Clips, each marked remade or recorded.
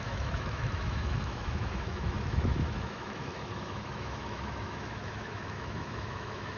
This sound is remade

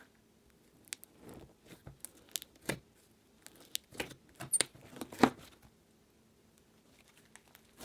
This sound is recorded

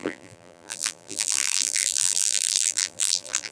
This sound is remade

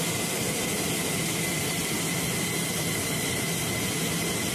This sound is recorded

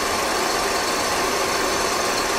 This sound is recorded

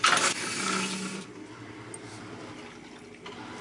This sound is recorded